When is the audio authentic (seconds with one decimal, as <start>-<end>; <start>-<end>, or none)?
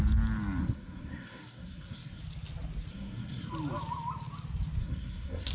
0.0-0.6; 2.2-2.9; 3.5-4.8